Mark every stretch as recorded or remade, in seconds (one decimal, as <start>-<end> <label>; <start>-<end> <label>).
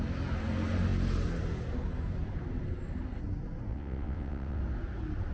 0.0-3.7 recorded; 3.7-4.6 remade; 4.6-5.3 recorded